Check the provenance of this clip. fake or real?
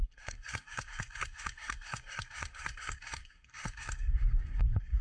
fake